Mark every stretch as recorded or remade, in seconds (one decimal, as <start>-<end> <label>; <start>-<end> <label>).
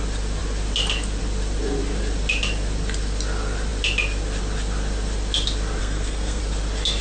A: 0.0-5.8 recorded; 5.8-6.4 remade; 6.4-7.0 recorded